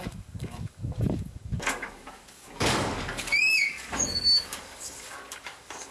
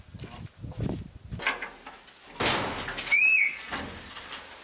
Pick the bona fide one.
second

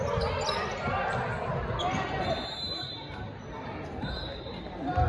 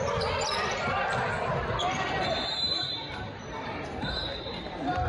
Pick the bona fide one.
first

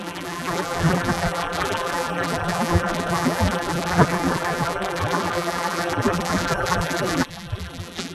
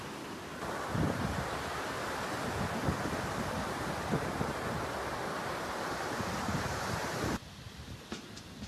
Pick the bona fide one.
second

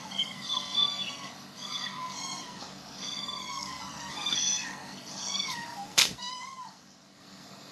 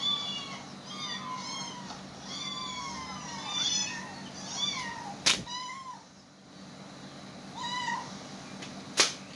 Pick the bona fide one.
second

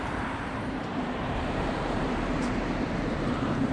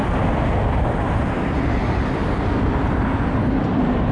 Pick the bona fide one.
second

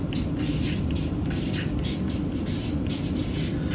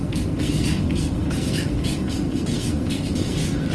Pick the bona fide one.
first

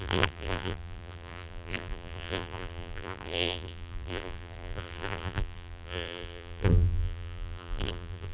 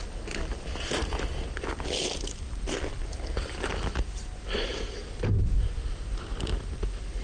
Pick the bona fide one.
second